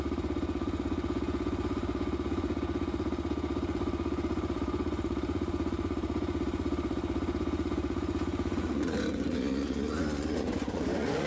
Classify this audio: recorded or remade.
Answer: remade